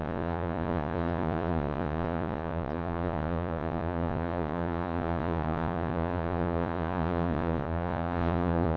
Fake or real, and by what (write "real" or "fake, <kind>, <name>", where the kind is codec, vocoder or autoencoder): fake, vocoder, Vocos